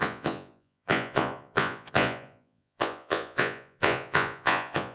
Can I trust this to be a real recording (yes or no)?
no